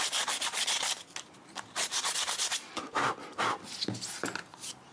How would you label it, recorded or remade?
recorded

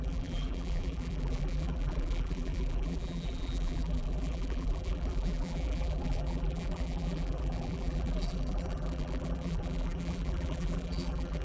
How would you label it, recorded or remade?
remade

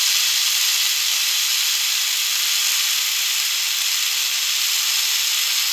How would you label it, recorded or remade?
recorded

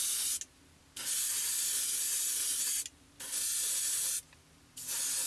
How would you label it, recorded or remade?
recorded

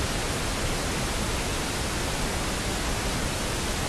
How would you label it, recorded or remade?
recorded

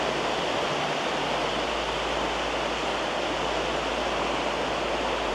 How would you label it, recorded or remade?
recorded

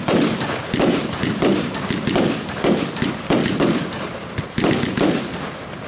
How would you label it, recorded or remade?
remade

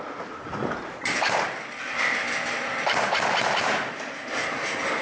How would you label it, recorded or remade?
remade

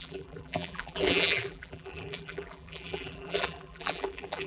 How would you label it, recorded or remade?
remade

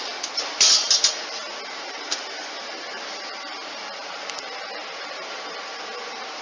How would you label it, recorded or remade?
recorded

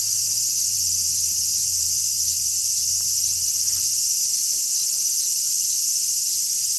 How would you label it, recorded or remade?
remade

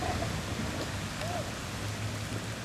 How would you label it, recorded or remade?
remade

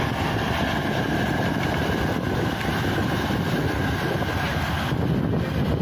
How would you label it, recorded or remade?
remade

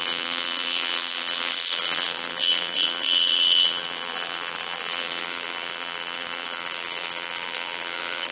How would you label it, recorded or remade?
remade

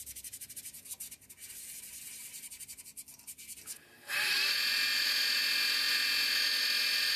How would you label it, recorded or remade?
recorded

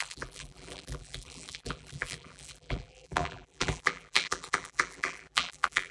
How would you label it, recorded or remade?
remade